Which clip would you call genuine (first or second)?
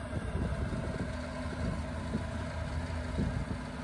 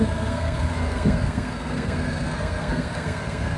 first